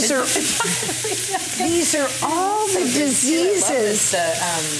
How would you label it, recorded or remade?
remade